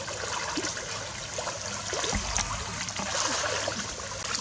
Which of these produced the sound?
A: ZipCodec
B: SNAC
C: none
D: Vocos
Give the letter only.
C